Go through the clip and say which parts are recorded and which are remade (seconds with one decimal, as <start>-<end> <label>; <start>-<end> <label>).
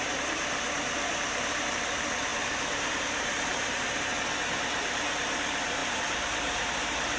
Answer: 0.0-4.1 remade; 4.1-5.1 recorded; 5.1-7.2 remade